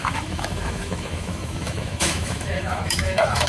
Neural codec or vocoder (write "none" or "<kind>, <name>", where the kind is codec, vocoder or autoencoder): autoencoder, DAC-VAE